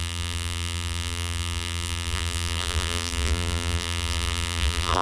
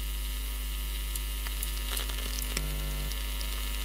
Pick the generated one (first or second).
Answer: first